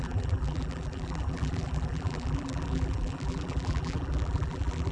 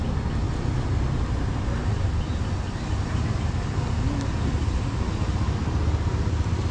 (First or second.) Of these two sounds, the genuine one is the second